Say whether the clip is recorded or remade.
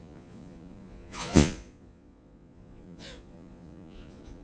remade